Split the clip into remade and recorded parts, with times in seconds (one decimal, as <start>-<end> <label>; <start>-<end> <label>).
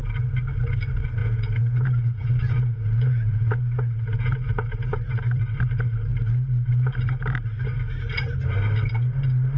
0.0-1.2 recorded; 1.2-5.2 remade; 5.2-9.6 recorded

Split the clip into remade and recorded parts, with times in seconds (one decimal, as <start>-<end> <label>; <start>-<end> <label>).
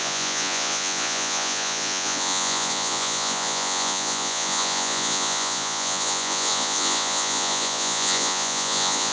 0.0-9.1 remade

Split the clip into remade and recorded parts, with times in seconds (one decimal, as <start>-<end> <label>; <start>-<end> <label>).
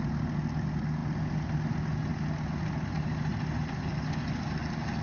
0.0-5.0 recorded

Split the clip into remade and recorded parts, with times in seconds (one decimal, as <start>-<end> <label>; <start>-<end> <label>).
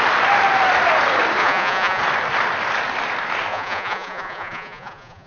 0.0-1.4 recorded; 1.4-2.0 remade; 2.0-3.5 recorded; 3.5-5.3 remade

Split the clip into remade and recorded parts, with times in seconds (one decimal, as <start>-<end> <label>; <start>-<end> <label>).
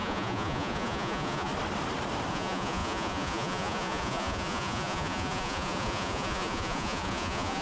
0.0-1.5 remade; 1.5-2.3 recorded; 2.3-7.6 remade